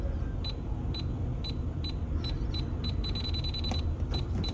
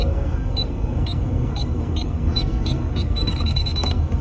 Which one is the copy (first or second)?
second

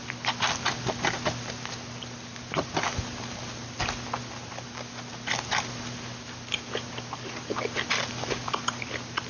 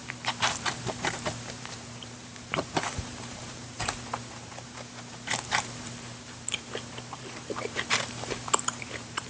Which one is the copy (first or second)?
second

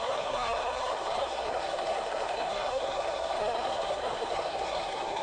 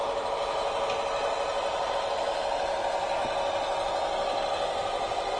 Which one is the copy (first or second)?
first